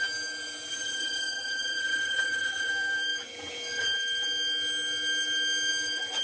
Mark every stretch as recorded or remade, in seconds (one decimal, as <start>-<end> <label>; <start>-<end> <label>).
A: 0.0-0.7 recorded; 0.7-2.7 remade; 2.7-6.2 recorded